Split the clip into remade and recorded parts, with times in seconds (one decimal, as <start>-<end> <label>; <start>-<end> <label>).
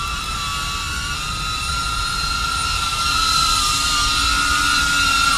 0.0-5.4 recorded